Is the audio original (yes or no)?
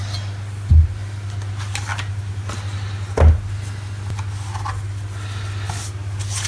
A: yes